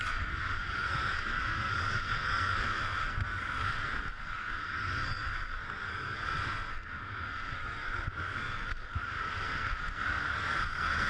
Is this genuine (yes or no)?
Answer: no